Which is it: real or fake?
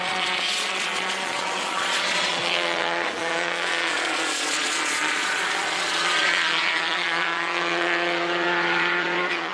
fake